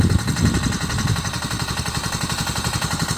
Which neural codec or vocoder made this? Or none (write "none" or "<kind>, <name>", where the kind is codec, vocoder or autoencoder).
none